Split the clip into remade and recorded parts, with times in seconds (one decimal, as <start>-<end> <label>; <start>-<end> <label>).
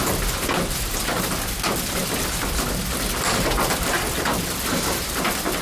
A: 0.0-5.6 recorded